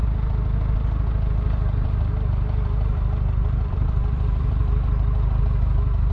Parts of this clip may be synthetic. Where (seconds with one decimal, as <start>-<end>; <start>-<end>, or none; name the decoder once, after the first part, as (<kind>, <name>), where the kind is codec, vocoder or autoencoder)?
3.7-4.6 (vocoder, BigVGAN v2); 5.4-6.1